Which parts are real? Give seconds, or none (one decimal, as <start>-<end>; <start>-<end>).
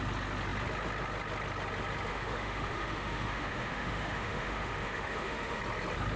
0.0-2.1; 5.6-6.2